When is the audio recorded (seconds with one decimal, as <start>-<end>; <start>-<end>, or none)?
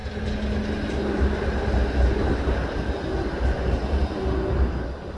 0.0-5.2